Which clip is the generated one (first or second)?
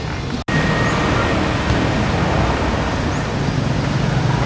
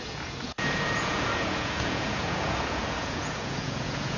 second